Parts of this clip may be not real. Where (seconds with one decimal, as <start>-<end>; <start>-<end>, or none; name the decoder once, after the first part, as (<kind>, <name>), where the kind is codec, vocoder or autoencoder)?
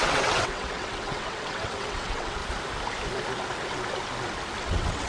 0.0-2.4 (vocoder, WaveNeXt); 4.6-5.1